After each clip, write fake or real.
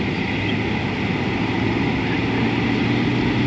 real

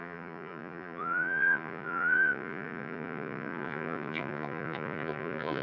fake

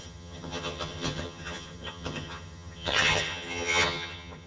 fake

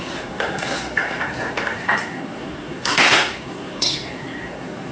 fake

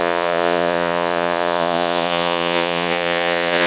fake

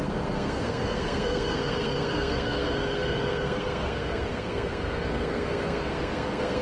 fake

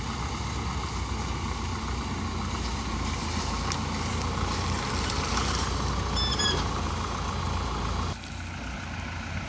real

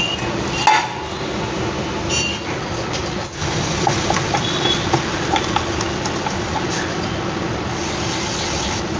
real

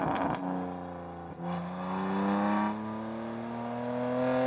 real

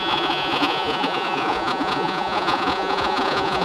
fake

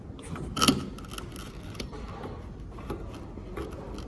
real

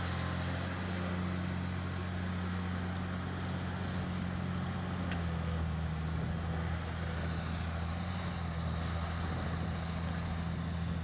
real